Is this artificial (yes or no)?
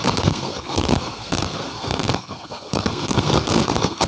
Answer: yes